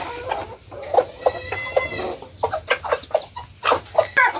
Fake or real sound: real